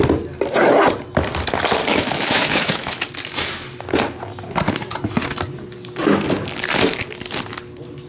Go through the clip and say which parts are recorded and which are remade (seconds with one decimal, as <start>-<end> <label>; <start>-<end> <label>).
0.0-1.9 recorded; 1.9-3.0 remade; 3.0-8.1 recorded

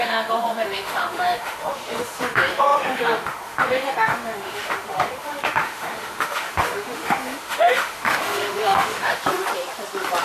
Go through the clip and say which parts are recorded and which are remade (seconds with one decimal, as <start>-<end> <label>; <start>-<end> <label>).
0.0-9.2 remade; 9.2-10.2 recorded

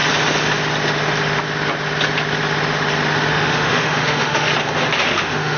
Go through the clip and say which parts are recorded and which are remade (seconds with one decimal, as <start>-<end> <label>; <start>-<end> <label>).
0.0-3.3 recorded; 3.3-4.5 remade; 4.5-5.1 recorded; 5.1-5.6 remade

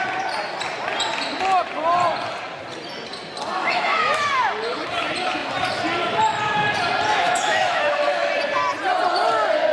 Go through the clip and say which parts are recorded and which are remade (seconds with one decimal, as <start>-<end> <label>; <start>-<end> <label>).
0.0-3.6 recorded; 3.6-4.3 remade; 4.3-7.1 recorded; 7.1-8.3 remade; 8.3-9.7 recorded

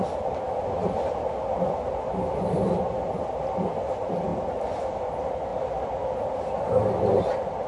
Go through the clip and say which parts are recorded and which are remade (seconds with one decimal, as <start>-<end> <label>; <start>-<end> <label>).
0.0-7.7 recorded

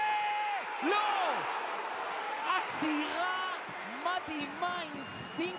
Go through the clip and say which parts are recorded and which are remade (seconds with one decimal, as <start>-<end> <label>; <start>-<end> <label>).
0.0-2.1 recorded; 2.1-2.7 remade; 2.7-5.6 recorded

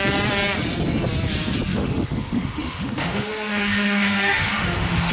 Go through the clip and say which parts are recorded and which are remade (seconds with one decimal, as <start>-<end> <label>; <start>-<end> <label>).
0.0-1.7 recorded; 1.7-5.1 remade